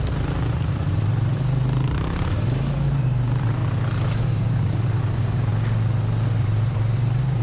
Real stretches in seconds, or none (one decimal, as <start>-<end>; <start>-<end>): 3.6-4.2; 5.5-6.4